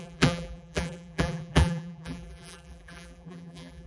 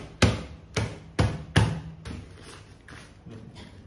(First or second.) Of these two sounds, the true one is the second